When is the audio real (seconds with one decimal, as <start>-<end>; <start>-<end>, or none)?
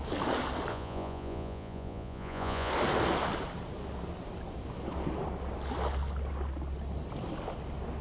0.0-0.7; 2.7-8.0